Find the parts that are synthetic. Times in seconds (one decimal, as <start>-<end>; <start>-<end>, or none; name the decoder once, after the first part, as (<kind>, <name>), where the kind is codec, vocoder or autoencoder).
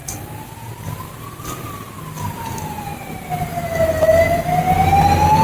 none